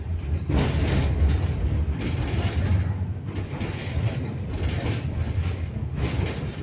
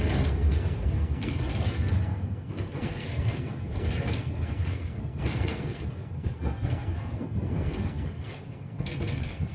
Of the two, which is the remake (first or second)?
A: second